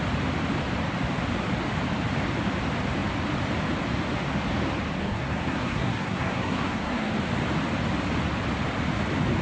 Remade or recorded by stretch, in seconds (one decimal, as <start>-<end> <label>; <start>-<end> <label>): 0.0-5.0 recorded; 5.0-7.1 remade; 7.1-9.4 recorded